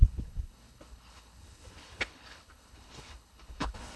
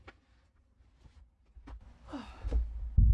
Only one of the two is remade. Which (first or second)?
first